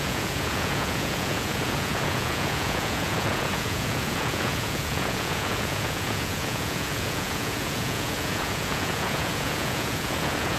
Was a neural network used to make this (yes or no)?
yes